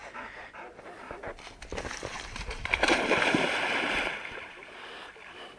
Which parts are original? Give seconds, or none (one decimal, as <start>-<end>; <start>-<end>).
0.0-1.7; 5.1-5.6